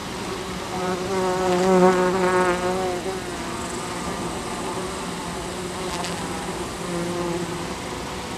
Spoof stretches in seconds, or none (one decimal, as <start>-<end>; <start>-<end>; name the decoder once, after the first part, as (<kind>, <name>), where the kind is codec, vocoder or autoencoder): 0.0-1.1 (vocoder, BigVGAN v2)